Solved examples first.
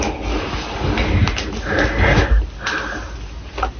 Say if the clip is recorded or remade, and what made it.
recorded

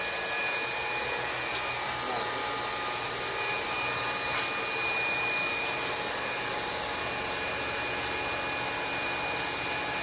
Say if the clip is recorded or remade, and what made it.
recorded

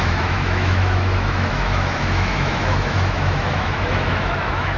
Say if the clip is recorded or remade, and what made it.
remade, autoencoder, DAC-VAE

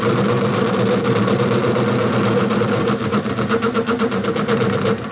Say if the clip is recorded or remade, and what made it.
recorded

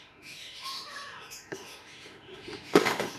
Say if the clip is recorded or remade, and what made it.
remade, autoencoder, DAC-VAE